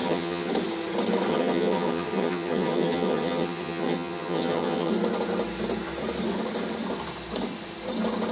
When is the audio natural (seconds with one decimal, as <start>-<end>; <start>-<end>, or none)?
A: 0.5-1.3; 4.9-8.3